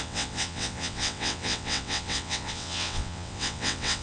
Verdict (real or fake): fake